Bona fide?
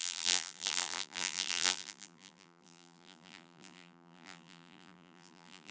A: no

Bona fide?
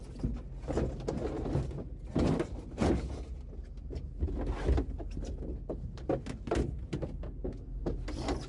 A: yes